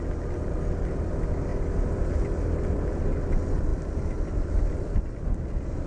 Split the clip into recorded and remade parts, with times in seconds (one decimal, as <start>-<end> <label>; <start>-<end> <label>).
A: 0.0-5.9 recorded